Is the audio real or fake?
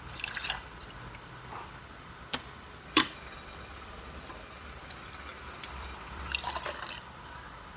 fake